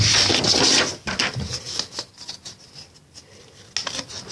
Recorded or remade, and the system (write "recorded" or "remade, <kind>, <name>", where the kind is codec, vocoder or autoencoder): recorded